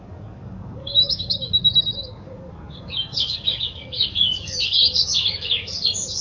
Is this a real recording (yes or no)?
no